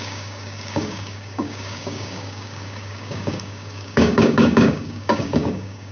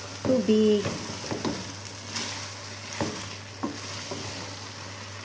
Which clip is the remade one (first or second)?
first